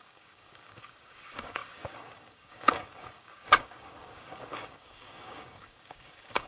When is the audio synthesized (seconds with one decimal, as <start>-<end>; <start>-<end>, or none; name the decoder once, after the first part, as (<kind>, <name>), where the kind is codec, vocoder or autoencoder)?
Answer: 0.0-6.5 (codec, DAC)